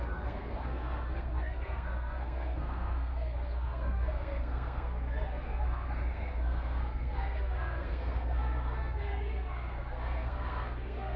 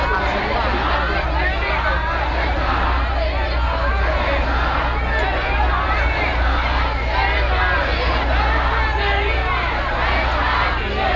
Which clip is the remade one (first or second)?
first